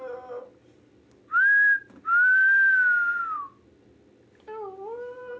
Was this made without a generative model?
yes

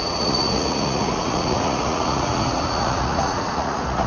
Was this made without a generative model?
no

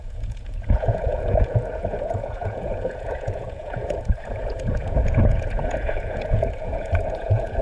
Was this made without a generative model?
no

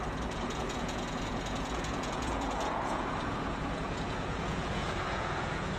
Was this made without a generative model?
no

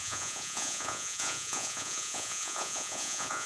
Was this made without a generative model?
no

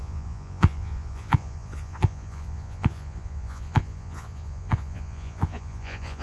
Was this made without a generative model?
no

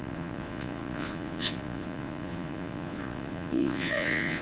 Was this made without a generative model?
no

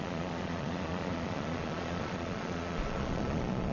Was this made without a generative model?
no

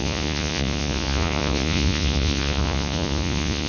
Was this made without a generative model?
no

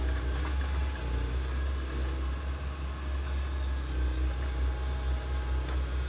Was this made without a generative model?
yes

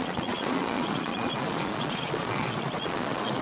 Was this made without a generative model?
no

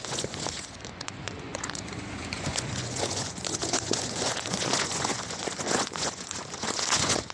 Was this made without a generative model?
no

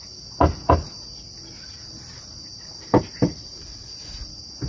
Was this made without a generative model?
yes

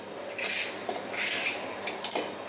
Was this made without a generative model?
yes